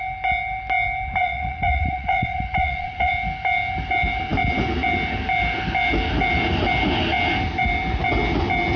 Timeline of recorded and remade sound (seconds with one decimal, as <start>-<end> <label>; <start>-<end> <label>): 0.0-1.2 recorded; 1.2-3.1 remade; 3.1-8.8 recorded